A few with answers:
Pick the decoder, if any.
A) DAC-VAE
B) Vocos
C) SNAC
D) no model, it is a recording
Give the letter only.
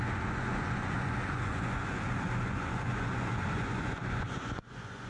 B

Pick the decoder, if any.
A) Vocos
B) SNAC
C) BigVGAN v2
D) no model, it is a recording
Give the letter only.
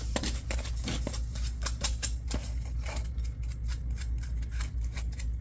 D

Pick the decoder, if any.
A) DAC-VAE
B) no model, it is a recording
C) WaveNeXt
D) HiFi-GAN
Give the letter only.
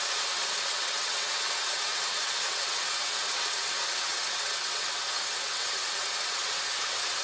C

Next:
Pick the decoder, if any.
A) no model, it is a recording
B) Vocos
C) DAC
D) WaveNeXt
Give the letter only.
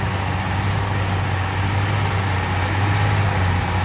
A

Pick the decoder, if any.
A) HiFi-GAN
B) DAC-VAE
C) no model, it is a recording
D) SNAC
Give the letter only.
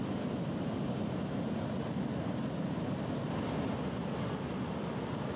C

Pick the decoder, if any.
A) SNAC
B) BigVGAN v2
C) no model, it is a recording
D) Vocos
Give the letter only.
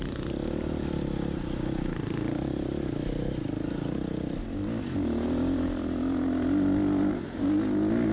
C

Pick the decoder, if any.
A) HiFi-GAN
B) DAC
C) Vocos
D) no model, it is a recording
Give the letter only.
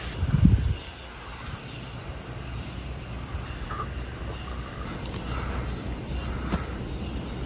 D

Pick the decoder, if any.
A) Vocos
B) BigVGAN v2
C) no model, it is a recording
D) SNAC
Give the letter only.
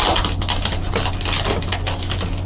C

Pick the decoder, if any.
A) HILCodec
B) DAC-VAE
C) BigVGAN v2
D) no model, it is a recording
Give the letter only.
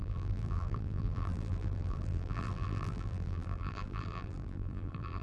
C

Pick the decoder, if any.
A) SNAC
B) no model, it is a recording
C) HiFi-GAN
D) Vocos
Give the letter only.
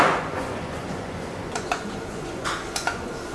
D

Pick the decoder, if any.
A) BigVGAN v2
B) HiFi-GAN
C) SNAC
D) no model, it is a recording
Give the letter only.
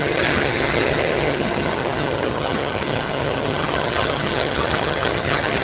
B